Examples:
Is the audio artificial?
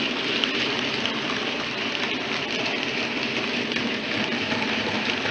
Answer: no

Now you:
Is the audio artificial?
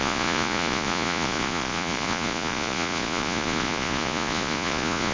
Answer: yes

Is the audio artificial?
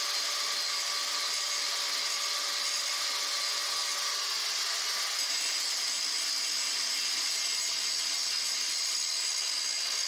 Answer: no